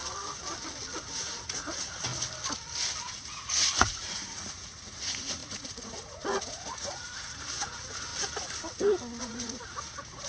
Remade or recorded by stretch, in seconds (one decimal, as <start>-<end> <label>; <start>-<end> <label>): 0.0-1.1 recorded; 1.1-2.1 remade; 2.1-3.0 recorded; 3.0-8.1 remade; 8.1-9.2 recorded; 9.2-10.3 remade